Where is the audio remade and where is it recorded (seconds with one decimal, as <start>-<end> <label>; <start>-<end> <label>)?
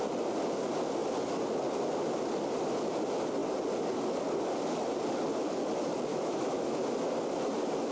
0.0-6.1 recorded; 6.1-6.9 remade; 6.9-7.9 recorded